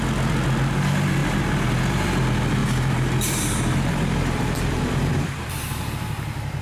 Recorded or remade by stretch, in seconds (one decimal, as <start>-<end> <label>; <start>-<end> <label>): 0.0-2.6 recorded; 2.6-5.9 remade; 5.9-6.6 recorded